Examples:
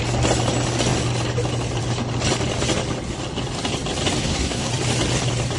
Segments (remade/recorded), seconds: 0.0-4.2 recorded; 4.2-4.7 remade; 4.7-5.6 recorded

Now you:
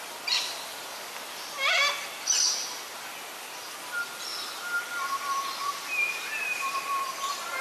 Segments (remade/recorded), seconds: 0.0-4.3 recorded; 4.3-7.0 remade; 7.0-7.6 recorded

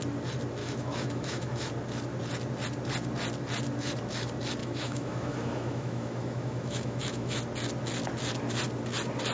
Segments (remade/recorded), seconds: 0.0-0.6 recorded; 0.6-1.7 remade; 1.7-4.6 recorded; 4.6-7.4 remade; 7.4-9.3 recorded